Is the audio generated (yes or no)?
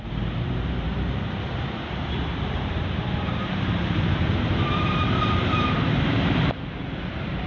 yes